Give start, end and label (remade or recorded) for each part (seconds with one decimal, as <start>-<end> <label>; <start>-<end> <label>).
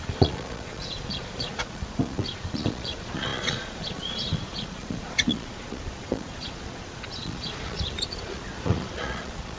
0.0-9.6 remade